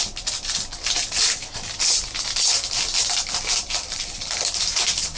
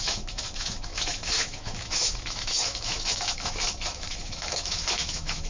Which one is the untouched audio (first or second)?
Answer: first